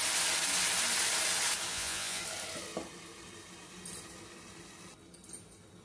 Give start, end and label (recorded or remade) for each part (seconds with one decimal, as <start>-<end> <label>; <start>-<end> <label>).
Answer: 0.0-1.7 recorded; 1.7-2.2 remade; 2.2-5.8 recorded